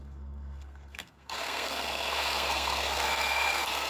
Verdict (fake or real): fake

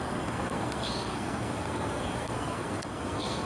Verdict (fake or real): fake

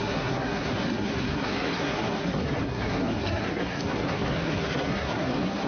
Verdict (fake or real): fake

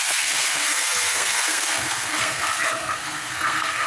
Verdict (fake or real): fake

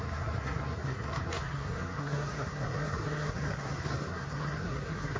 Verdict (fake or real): fake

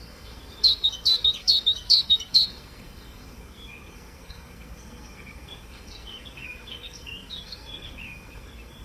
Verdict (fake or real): fake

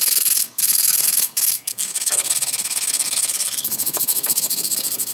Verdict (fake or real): fake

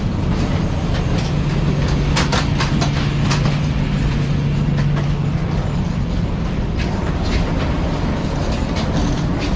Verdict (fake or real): real